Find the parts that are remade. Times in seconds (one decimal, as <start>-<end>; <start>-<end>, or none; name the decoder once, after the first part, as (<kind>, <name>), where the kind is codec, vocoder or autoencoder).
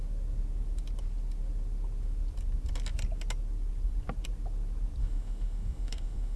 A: 5.0-6.4 (autoencoder, DAC-VAE)